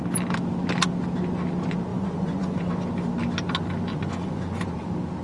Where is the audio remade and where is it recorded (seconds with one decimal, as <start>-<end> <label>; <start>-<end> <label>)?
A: 0.0-1.9 recorded; 1.9-2.7 remade; 2.7-3.9 recorded; 3.9-4.7 remade; 4.7-5.2 recorded